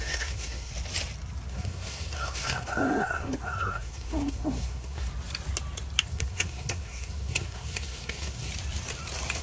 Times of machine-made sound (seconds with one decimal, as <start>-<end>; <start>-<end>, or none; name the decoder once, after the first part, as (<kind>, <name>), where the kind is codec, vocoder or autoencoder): 0.0-0.7 (codec, SNAC); 1.5-5.1; 6.1-8.5